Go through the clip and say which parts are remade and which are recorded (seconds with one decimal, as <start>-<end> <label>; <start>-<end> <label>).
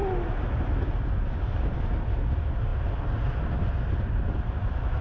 0.0-5.0 recorded